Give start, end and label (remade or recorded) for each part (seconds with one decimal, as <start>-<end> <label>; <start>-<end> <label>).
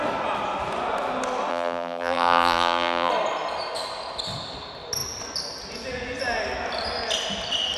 0.0-1.5 recorded; 1.5-3.1 remade; 3.1-7.8 recorded